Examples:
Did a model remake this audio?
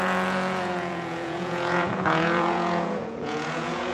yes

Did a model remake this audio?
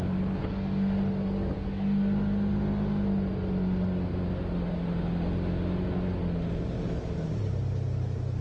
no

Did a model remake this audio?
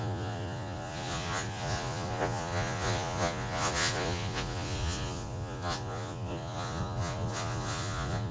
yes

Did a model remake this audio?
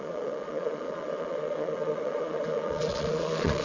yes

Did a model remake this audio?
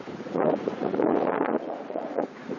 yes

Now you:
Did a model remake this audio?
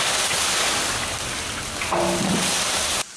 no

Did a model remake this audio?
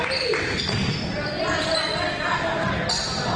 no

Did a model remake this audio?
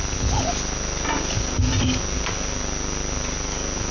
no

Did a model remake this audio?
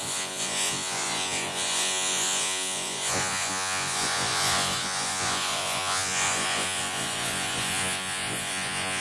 yes